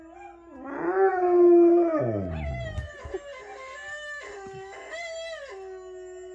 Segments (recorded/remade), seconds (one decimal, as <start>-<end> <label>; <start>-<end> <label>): 0.0-6.3 recorded